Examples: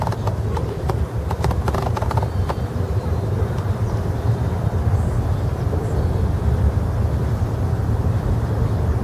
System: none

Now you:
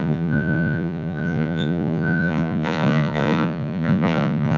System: vocoder, Vocos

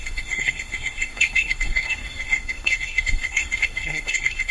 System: codec, SNAC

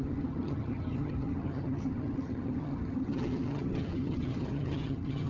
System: vocoder, HiFi-GAN